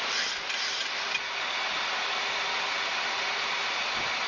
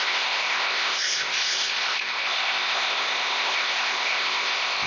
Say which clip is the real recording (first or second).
first